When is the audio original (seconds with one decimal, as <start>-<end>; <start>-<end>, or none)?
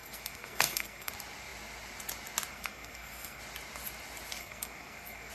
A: 1.1-2.5; 3.4-4.4